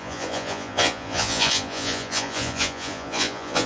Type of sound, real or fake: fake